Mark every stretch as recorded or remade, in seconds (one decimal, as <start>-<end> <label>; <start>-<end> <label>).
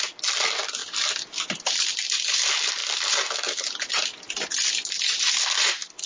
0.0-0.8 remade; 0.8-1.4 recorded; 1.4-6.1 remade